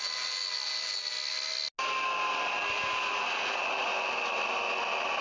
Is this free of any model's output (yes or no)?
yes